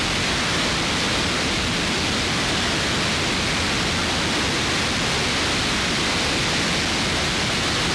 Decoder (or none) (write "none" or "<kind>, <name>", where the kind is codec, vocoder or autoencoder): none